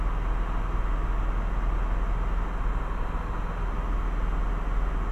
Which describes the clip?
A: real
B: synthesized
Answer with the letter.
A